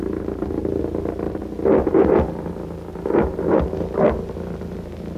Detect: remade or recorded recorded